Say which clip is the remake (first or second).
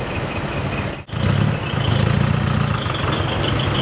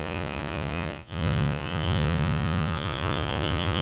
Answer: second